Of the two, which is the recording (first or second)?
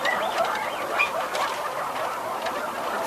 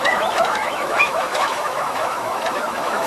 first